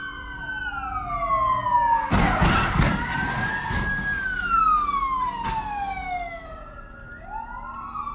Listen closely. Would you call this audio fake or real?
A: real